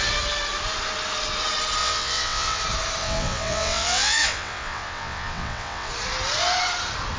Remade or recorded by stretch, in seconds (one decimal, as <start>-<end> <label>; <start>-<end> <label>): 0.0-1.8 recorded; 1.8-2.6 remade; 2.6-3.0 recorded; 3.0-5.9 remade; 5.9-7.2 recorded